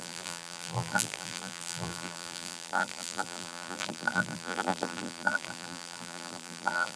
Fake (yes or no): yes